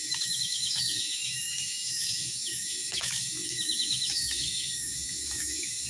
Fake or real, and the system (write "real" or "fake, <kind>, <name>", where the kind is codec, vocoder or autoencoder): fake, autoencoder, DAC-VAE